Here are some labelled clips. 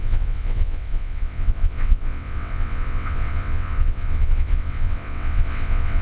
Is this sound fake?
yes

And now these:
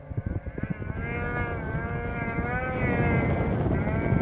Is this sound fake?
no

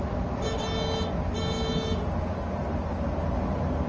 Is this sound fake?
no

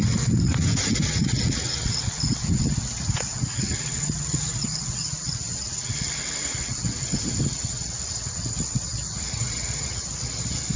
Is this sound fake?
yes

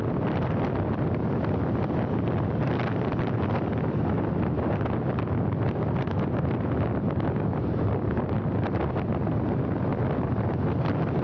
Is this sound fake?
no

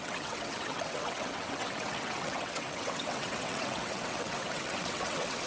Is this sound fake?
yes